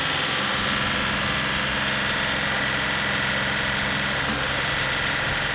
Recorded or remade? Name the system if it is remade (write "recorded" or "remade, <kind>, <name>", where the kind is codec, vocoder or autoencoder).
recorded